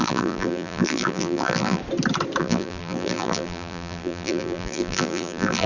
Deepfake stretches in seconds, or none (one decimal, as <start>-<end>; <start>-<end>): 0.0-1.8; 2.4-5.7